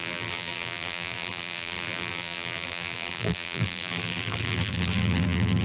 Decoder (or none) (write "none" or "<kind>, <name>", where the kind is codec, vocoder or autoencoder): vocoder, BigVGAN v2